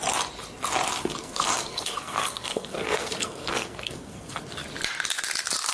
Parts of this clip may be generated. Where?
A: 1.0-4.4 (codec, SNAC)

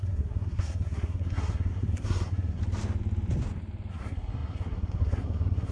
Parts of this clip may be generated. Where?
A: 0.0-2.6 (codec, SNAC); 3.9-5.7

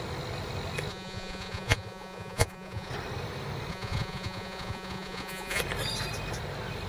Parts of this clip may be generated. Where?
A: 0.9-2.9 (vocoder, Vocos); 3.7-5.6

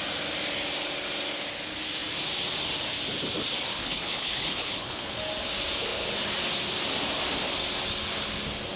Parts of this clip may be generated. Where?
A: 3.7-5.1 (codec, HILCodec)

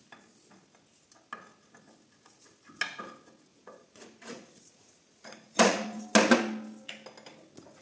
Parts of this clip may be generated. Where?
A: 3.5-6.0 (vocoder, Vocos)